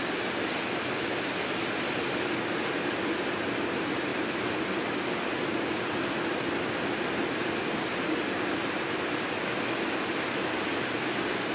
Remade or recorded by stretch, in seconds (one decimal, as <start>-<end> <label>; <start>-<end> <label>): 0.0-4.1 recorded; 4.1-8.9 remade; 8.9-11.5 recorded